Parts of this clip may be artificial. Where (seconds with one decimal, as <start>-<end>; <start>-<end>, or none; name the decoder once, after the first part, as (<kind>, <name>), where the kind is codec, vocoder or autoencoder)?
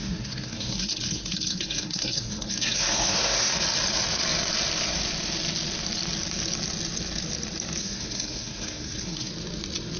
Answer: 0.0-3.5 (codec, SNAC); 7.8-9.3